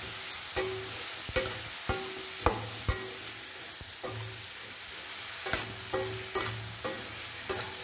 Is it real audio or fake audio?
real